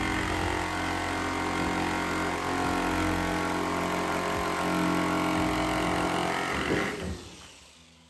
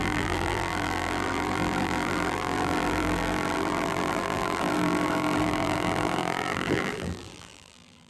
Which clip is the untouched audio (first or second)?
first